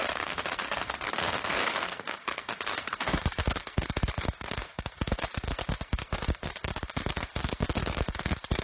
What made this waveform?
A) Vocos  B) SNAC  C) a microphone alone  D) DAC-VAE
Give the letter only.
B